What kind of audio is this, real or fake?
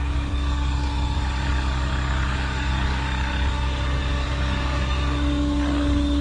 fake